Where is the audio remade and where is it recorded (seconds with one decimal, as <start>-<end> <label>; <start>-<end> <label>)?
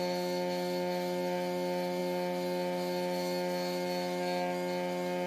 0.0-5.3 recorded